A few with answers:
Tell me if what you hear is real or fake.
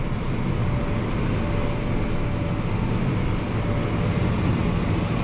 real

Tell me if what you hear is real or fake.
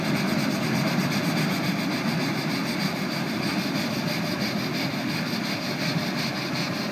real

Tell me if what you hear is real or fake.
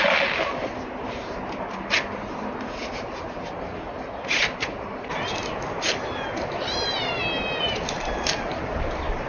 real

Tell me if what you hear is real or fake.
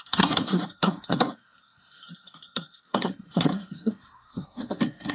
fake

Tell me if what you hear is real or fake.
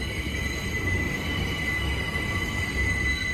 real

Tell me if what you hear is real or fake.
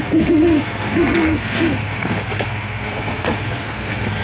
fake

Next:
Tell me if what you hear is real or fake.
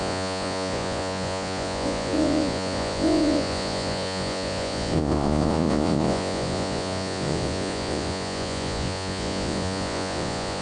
fake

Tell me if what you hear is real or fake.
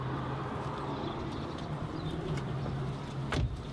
fake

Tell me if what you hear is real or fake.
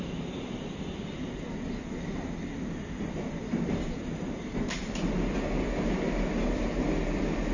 real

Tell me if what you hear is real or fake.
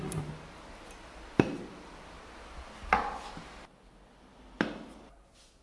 real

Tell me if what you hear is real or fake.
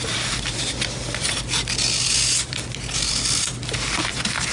fake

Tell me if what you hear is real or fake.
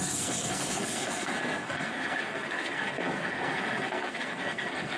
fake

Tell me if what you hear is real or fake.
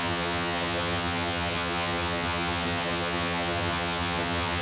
fake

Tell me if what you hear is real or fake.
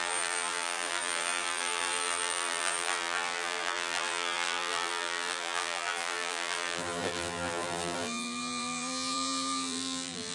fake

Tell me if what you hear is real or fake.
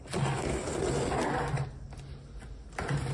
real